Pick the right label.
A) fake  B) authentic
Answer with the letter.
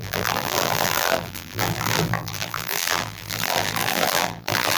A